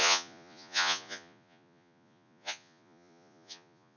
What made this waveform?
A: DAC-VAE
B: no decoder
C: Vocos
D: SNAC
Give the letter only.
C